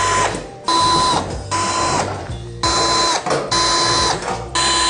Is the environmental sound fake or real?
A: real